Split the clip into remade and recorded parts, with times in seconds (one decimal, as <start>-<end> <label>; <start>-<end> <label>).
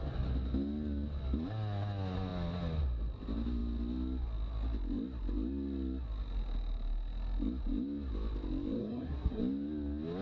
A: 0.0-8.8 recorded; 8.8-9.4 remade; 9.4-10.2 recorded